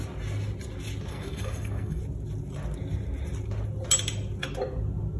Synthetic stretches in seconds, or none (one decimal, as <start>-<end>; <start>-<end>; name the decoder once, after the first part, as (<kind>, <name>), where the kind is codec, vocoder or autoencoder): 1.1-2.0 (codec, SNAC)